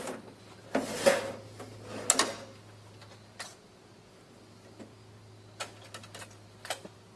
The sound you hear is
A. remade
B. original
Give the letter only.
B